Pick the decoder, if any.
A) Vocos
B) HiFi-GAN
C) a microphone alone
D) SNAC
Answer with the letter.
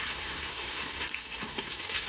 D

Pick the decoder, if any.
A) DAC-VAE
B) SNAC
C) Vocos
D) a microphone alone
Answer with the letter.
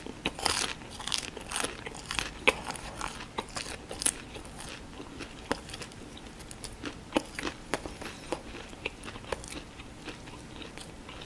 D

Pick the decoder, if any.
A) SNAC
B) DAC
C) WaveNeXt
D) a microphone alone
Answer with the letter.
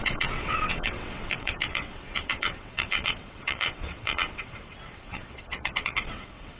C